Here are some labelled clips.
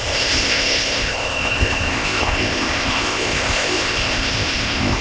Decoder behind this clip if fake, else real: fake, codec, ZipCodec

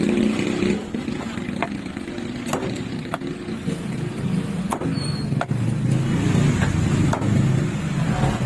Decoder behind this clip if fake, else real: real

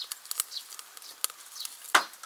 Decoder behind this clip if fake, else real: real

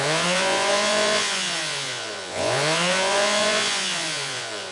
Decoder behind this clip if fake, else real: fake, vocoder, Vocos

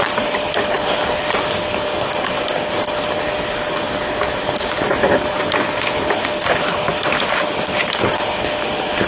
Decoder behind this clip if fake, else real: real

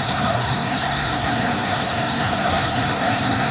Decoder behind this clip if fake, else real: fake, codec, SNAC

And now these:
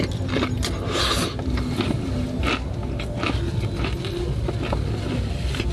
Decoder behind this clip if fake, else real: real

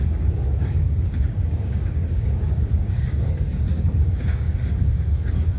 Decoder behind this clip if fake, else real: fake, codec, DAC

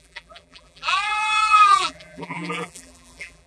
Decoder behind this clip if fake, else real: fake, vocoder, BigVGAN v2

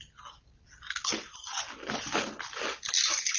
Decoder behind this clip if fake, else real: real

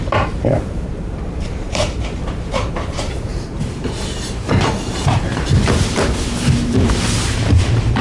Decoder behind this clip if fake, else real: fake, vocoder, BigVGAN v2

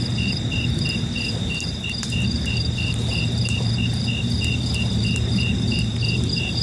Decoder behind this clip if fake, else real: fake, vocoder, BigVGAN v2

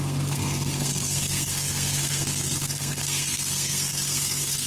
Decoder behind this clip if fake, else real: fake, codec, SNAC